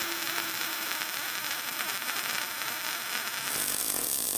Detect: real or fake real